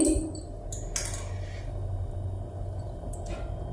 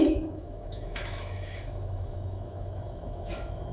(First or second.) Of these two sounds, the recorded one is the first